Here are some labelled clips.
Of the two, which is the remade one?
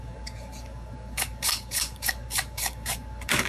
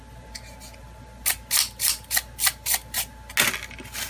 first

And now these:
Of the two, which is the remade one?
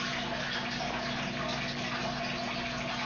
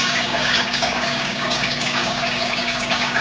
second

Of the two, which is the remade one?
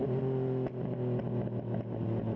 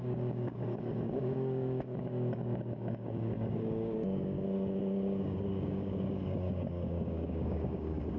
second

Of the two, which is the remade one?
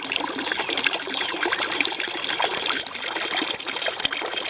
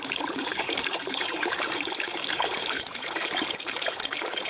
second